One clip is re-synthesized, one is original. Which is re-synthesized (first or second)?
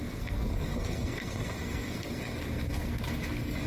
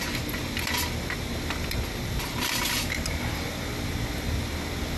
first